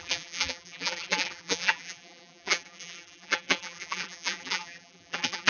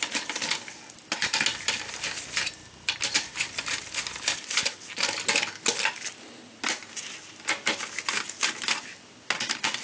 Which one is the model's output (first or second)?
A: first